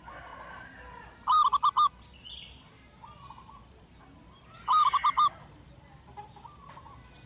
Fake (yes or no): no